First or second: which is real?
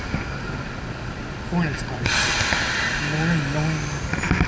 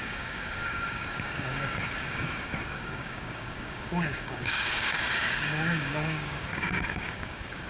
first